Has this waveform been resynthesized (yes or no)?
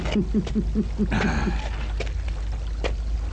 no